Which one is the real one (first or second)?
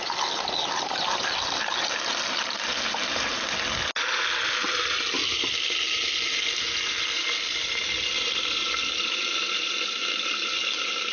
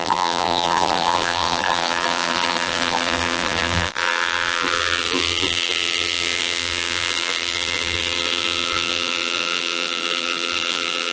first